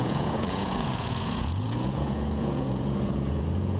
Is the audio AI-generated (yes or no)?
yes